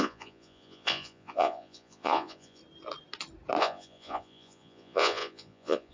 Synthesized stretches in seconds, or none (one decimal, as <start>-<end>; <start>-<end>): 0.0-2.6; 3.6-5.9